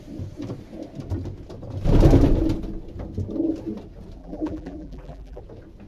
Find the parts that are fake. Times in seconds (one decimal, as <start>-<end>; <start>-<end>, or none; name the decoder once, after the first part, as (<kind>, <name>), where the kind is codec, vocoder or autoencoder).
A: 4.2-5.4 (vocoder, BigVGAN v2)